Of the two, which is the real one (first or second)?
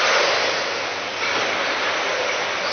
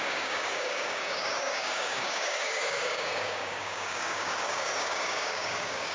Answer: first